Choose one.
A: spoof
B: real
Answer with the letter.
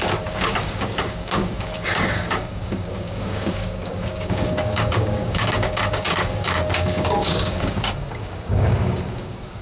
A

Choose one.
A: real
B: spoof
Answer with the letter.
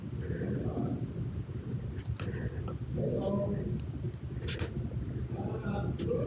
A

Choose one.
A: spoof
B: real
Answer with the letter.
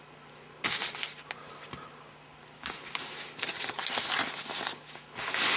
B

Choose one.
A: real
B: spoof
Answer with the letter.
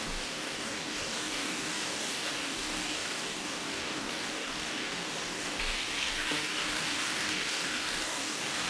B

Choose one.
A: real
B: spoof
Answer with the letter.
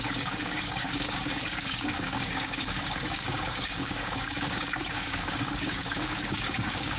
B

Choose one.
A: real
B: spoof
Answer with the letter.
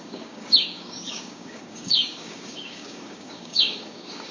B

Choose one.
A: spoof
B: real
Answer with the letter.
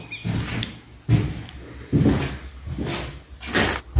B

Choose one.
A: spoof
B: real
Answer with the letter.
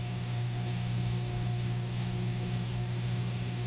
A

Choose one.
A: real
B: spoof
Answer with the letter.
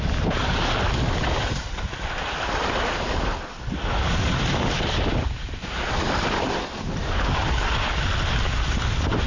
A